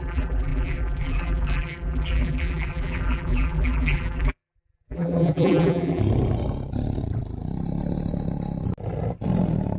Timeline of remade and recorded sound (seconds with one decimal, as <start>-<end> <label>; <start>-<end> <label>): 0.0-6.0 remade; 6.0-9.8 recorded